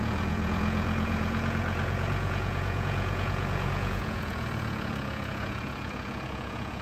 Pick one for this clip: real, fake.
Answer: fake